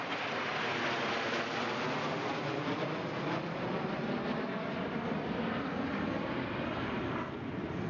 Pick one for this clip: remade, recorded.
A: recorded